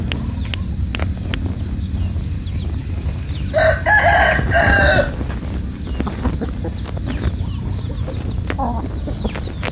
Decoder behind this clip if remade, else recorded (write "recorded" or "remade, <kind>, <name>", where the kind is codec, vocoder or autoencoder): recorded